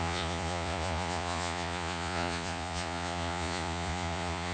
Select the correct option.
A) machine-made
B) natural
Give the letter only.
A